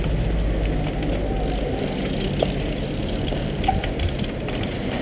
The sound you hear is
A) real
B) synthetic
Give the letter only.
A